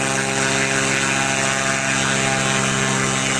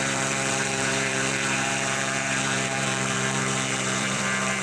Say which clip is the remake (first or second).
second